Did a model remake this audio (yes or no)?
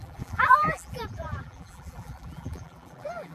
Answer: yes